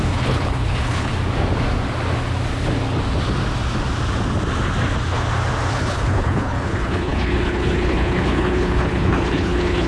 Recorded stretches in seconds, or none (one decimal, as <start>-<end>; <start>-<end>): 1.1-5.7